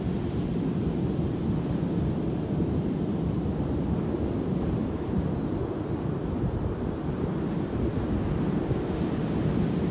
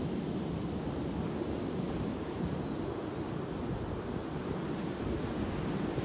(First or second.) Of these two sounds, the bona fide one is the second